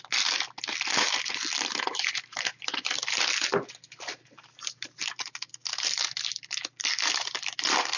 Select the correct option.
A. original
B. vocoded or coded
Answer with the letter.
A